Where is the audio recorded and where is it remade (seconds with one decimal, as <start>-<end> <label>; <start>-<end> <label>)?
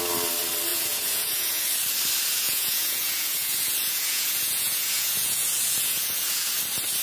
0.0-0.7 recorded; 0.7-1.6 remade; 1.6-2.3 recorded; 2.3-6.5 remade; 6.5-7.0 recorded